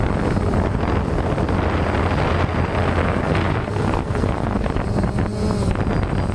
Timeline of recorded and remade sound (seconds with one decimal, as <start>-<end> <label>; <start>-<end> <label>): 0.0-3.0 recorded; 3.0-4.7 remade; 4.7-6.3 recorded